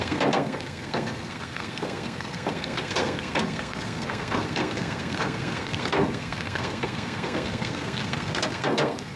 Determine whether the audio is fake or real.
fake